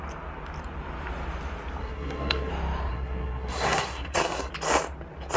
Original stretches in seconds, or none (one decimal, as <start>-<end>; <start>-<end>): 0.0-1.8; 2.5-2.9; 4.5-5.4